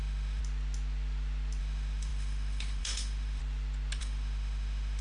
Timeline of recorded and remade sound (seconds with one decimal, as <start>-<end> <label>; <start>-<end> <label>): 0.0-0.4 remade; 0.4-1.6 recorded; 1.6-3.4 remade; 3.4-4.0 recorded; 4.0-5.0 remade